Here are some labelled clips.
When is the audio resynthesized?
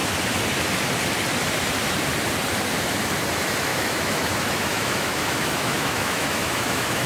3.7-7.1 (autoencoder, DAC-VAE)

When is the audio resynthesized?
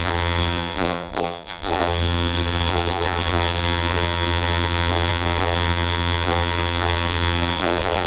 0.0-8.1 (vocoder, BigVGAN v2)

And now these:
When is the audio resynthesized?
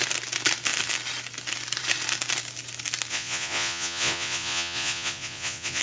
3.1-5.8 (vocoder, Vocos)